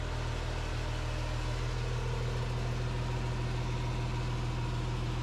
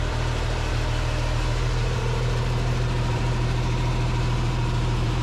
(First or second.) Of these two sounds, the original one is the first